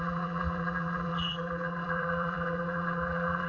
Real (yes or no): no